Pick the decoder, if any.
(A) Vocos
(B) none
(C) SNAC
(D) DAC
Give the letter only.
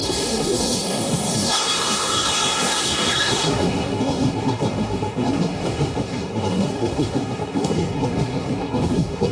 C